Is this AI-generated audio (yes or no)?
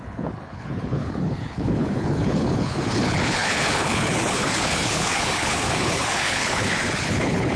yes